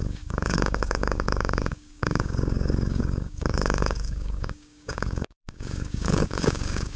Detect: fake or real fake